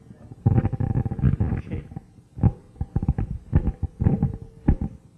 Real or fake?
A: real